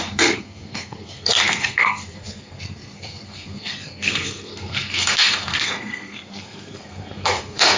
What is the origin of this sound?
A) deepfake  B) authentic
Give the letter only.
A